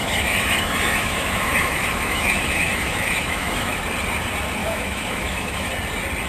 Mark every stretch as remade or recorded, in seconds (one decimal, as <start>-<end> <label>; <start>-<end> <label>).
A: 0.0-3.8 remade; 3.8-4.6 recorded; 4.6-5.7 remade; 5.7-6.3 recorded